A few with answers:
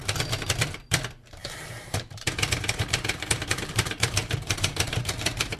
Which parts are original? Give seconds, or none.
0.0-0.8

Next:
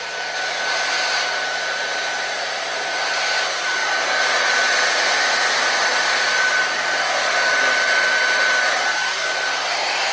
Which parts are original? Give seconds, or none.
3.8-5.0

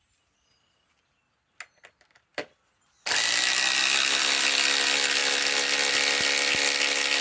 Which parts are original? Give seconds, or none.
0.0-7.2

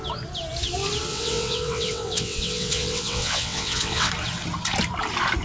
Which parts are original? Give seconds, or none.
0.0-1.1; 4.1-5.4